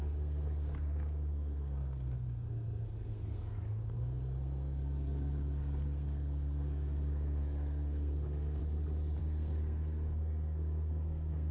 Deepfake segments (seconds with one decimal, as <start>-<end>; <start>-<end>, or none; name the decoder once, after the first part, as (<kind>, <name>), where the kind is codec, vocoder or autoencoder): 0.0-8.6 (codec, SNAC); 9.2-11.5